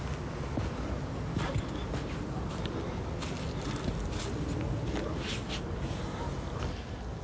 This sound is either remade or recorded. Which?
recorded